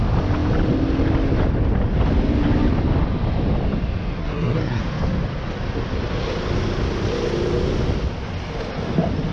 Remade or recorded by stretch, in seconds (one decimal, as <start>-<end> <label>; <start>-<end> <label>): 0.0-4.2 recorded; 4.2-4.8 remade; 4.8-9.3 recorded